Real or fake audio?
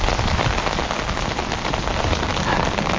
real